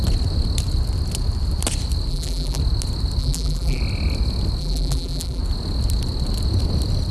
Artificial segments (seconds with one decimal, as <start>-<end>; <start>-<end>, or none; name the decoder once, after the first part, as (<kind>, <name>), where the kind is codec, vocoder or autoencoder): 2.1-2.6 (vocoder, BigVGAN v2); 3.2-3.8; 4.6-5.4